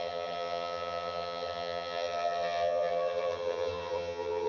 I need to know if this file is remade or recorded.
remade